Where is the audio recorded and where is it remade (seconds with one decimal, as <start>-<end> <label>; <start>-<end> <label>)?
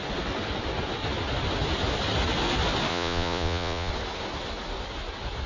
0.0-2.9 recorded; 2.9-3.9 remade; 3.9-5.5 recorded